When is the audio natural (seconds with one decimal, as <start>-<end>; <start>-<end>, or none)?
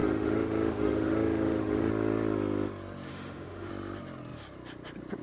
1.9-3.1; 3.7-5.2